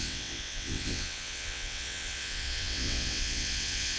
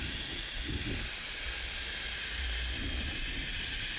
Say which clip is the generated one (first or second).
first